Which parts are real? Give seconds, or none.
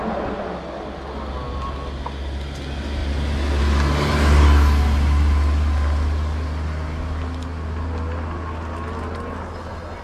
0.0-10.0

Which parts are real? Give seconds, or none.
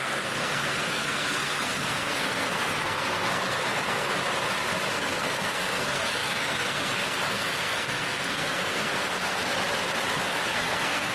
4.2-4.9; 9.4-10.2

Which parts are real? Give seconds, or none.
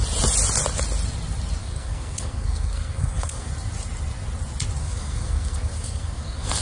0.0-1.6; 3.5-4.8